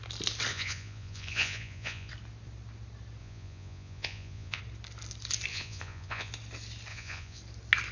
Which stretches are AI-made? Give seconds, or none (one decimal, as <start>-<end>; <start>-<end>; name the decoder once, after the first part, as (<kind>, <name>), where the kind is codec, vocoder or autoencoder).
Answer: 0.5-2.1 (vocoder, Vocos); 3.2-4.6; 5.5-6.3; 6.9-7.4